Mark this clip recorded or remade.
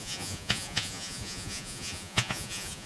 remade